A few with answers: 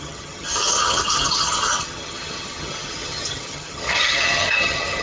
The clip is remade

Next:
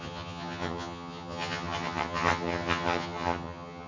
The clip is remade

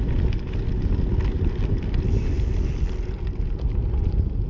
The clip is recorded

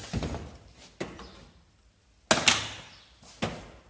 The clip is recorded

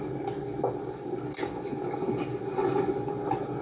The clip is recorded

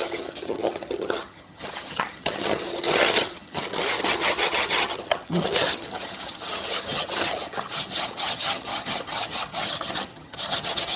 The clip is remade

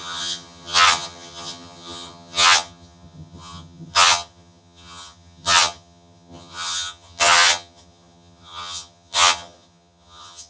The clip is remade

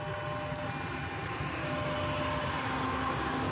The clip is recorded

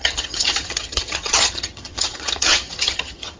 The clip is remade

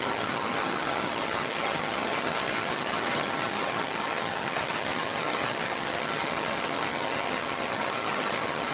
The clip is remade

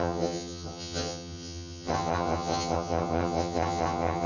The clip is remade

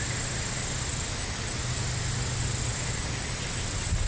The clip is recorded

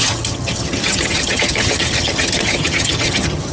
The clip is remade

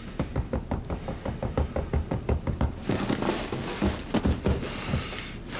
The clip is recorded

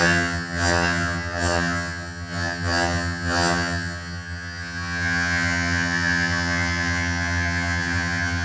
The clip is remade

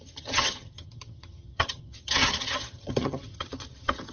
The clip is remade